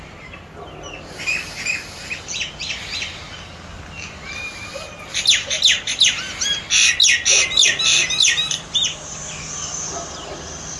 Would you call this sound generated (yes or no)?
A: no